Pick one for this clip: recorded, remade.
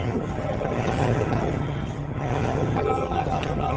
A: remade